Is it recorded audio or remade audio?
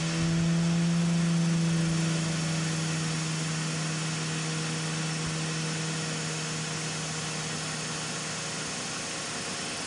recorded